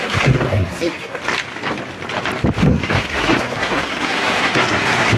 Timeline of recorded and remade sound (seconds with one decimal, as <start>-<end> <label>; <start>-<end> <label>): 0.0-1.2 remade; 1.2-2.6 recorded; 2.6-5.2 remade